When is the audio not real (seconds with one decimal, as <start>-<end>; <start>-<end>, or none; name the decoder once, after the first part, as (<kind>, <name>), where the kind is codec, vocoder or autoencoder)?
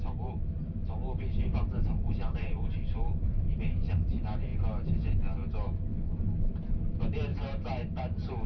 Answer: 0.0-4.5 (vocoder, BigVGAN v2); 6.4-8.5